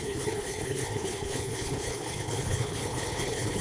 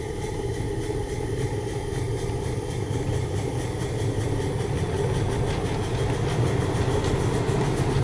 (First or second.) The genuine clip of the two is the second